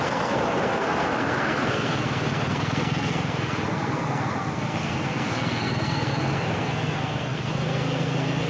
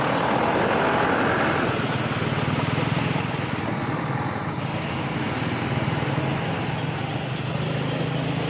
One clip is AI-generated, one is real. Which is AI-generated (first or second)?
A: first